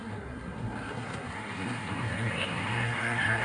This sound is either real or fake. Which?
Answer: fake